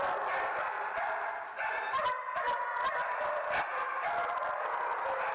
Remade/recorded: recorded